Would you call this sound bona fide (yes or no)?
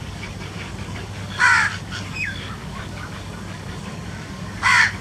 no